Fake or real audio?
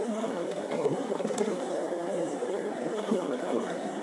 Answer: fake